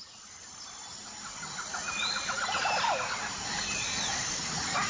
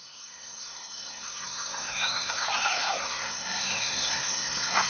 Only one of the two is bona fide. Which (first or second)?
first